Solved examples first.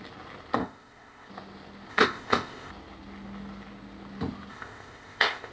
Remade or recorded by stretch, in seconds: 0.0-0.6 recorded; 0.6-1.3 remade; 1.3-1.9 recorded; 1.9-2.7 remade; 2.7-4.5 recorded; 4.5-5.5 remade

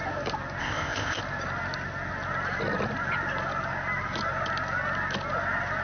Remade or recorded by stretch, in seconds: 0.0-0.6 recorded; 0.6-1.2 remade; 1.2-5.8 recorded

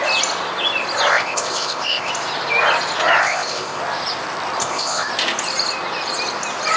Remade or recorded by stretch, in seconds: 0.0-1.1 recorded; 1.1-2.1 remade; 2.1-3.2 recorded; 3.2-3.8 remade; 3.8-4.6 recorded; 4.6-5.1 remade; 5.1-6.8 recorded

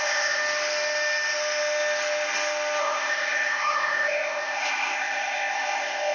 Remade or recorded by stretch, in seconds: 0.0-0.4 remade; 0.4-2.8 recorded; 2.8-6.1 remade